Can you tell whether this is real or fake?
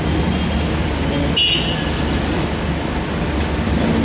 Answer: real